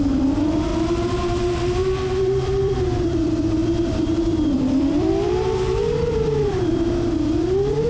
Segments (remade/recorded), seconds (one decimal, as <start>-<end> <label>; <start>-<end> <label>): 0.0-0.7 remade; 0.7-2.2 recorded; 2.2-7.9 remade